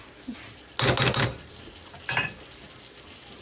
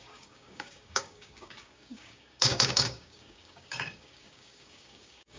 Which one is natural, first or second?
first